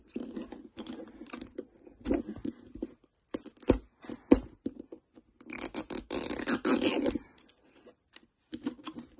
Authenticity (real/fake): real